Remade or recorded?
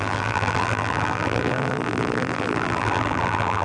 remade